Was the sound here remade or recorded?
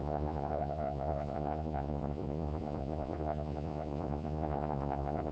remade